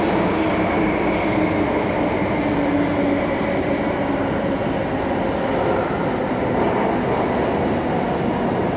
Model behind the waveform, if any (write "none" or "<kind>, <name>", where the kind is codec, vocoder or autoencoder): none